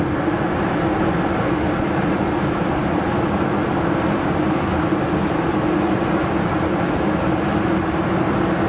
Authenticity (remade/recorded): recorded